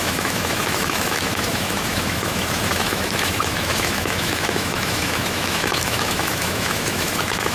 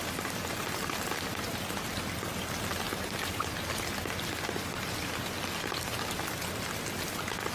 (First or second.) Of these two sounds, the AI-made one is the first